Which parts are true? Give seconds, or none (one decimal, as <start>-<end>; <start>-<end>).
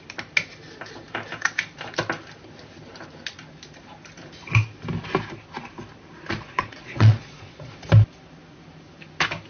0.0-6.4; 7.7-9.5